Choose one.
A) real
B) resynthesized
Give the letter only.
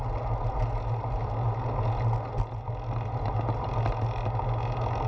A